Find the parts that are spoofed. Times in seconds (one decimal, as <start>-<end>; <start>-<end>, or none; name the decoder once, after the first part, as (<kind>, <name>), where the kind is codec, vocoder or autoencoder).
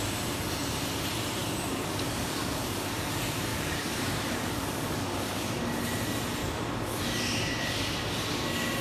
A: 1.4-2.9 (codec, DAC); 3.5-5.6; 6.4-7.0